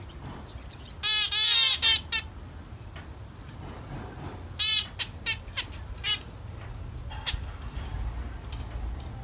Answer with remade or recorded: recorded